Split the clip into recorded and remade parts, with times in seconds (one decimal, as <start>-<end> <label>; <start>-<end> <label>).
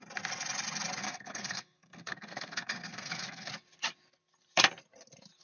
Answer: 0.0-1.0 recorded; 1.0-3.5 remade; 3.5-5.4 recorded